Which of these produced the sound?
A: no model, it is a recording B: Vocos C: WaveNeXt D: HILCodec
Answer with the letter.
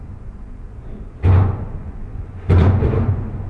B